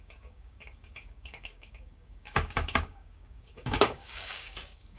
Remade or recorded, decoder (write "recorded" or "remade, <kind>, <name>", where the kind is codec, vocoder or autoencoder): remade, codec, DAC